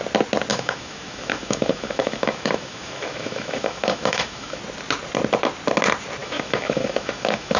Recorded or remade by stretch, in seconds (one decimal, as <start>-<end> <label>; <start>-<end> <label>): 0.0-0.5 recorded; 0.5-4.6 remade; 4.6-6.2 recorded; 6.2-7.6 remade